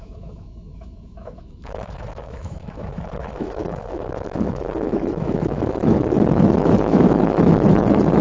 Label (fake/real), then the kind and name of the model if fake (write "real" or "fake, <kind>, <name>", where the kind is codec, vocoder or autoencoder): fake, autoencoder, DAC-VAE